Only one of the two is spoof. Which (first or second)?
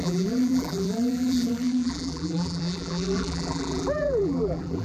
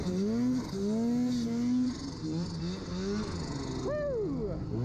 first